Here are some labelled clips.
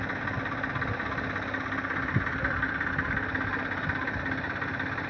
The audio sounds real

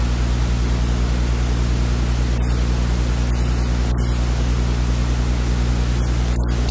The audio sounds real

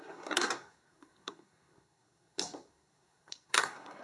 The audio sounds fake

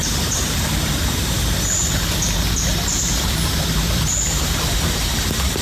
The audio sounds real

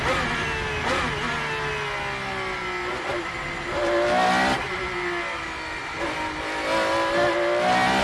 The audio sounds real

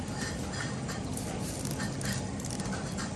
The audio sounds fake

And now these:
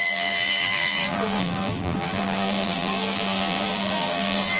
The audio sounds fake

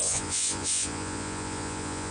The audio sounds fake